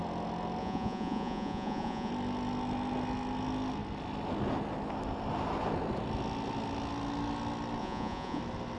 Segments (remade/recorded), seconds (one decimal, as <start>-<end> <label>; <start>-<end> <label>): 0.0-0.6 recorded; 0.6-2.1 remade; 2.1-7.8 recorded; 7.8-8.4 remade; 8.4-8.8 recorded